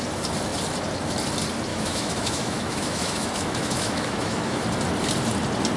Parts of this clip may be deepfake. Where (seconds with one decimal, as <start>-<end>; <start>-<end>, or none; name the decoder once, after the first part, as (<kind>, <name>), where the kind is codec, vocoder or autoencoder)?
1.7-4.6 (autoencoder, DAC-VAE)